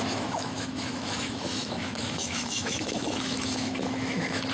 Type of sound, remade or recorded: remade